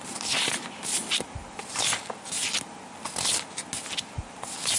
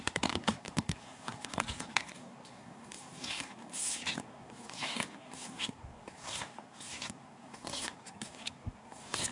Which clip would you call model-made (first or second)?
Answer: second